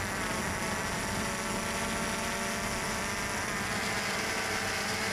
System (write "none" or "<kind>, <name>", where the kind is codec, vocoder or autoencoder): none